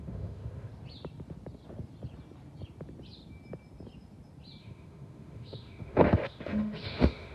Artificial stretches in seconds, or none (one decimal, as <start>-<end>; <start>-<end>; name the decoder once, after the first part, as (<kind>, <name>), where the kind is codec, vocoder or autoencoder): 0.0-0.7 (autoencoder, DAC-VAE); 4.6-7.3